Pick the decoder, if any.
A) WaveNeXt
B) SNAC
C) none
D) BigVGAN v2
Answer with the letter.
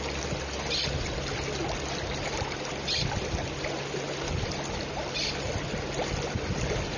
C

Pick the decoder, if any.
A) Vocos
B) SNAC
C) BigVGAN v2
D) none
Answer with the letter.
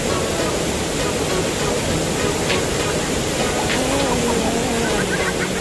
D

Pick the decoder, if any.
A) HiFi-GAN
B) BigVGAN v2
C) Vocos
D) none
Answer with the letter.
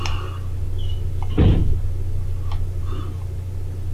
D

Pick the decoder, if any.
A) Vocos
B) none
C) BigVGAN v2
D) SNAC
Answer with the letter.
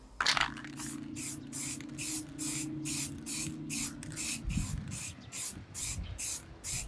B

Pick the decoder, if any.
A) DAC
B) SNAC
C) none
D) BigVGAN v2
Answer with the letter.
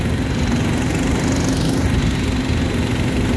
C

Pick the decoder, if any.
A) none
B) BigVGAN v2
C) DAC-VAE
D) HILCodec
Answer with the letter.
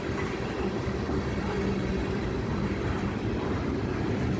A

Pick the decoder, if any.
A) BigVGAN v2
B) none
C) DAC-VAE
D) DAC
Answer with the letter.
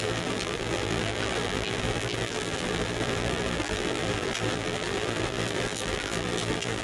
A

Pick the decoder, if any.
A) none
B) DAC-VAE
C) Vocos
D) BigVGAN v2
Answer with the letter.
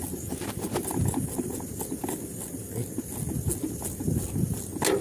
A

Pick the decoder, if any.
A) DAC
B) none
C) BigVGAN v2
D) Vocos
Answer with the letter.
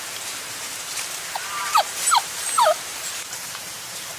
C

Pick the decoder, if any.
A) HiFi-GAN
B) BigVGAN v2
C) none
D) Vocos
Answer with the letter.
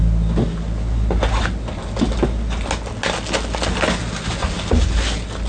C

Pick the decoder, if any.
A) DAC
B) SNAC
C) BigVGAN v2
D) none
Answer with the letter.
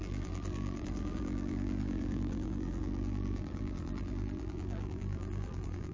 C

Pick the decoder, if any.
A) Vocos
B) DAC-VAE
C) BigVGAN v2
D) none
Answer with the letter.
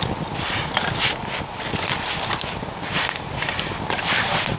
D